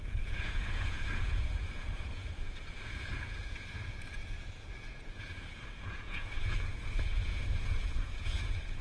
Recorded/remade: remade